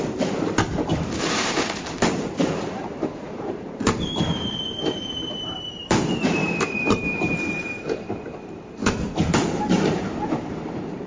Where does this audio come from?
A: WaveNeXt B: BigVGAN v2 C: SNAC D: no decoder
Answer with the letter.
B